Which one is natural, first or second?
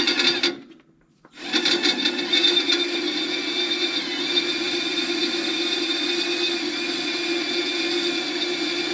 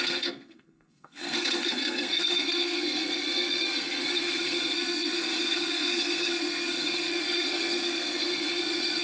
first